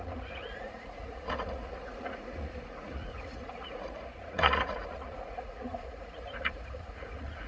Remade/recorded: remade